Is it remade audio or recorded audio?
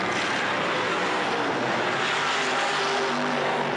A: recorded